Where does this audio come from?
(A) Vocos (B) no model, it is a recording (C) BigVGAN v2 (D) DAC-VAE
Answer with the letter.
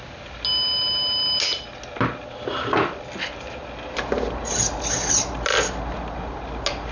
B